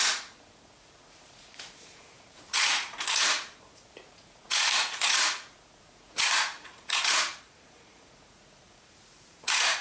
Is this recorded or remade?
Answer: remade